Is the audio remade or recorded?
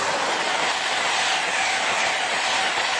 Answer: remade